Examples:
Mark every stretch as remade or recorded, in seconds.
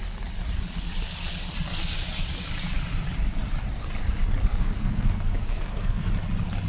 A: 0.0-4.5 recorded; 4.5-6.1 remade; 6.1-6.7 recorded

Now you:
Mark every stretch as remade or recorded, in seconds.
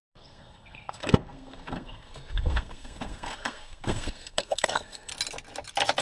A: 0.0-5.1 remade; 5.1-6.0 recorded